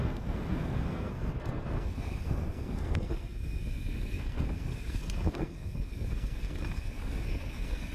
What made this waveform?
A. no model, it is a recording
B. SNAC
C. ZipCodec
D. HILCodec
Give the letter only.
B